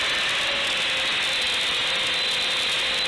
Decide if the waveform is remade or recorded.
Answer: recorded